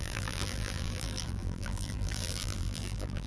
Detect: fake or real fake